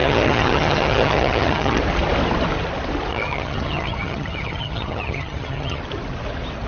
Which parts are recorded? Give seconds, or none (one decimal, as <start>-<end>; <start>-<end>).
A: 1.8-3.1; 5.8-6.7